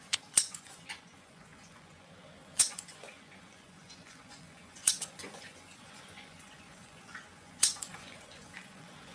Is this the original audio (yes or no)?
no